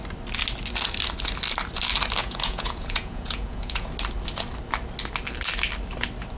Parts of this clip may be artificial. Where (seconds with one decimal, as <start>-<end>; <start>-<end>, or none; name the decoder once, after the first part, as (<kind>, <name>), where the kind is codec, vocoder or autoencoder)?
2.2-3.9 (vocoder, Vocos)